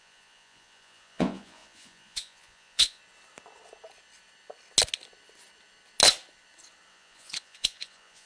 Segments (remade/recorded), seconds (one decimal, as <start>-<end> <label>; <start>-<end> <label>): 0.0-3.0 remade; 3.0-6.9 recorded; 6.9-8.3 remade